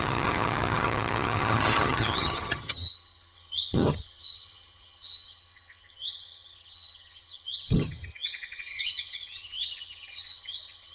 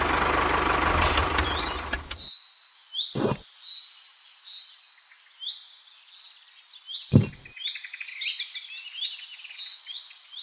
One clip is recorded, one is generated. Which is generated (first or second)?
first